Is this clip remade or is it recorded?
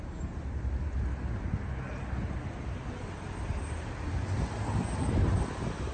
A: recorded